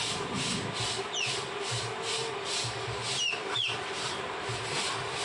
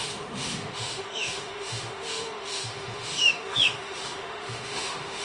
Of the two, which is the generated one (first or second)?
second